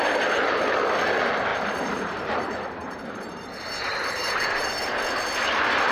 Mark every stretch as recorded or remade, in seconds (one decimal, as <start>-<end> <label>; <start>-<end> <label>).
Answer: 0.0-1.5 recorded; 1.5-5.0 remade; 5.0-5.9 recorded